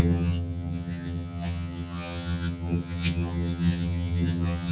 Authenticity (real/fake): fake